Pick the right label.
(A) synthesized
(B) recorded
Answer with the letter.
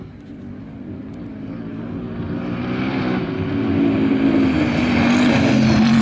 B